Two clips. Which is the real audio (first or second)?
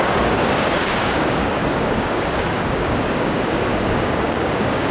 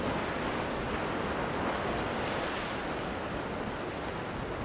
second